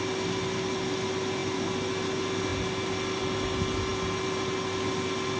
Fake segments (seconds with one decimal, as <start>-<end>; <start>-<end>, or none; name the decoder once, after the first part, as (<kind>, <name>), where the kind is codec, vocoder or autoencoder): none